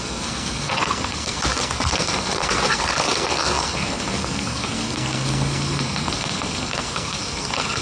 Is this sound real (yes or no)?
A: no